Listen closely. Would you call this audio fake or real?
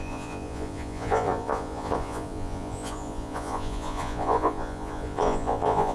fake